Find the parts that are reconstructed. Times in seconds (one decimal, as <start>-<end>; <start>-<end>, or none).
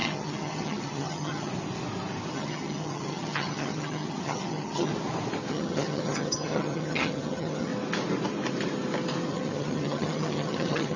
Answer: 0.0-1.5; 2.3-4.9; 5.5-7.7; 9.3-11.0